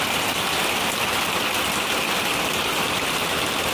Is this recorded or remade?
recorded